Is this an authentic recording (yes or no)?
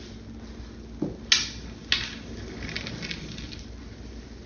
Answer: yes